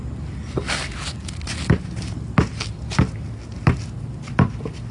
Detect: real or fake real